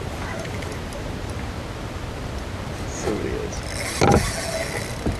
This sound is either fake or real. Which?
real